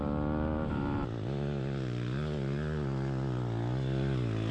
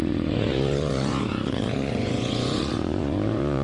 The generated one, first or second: second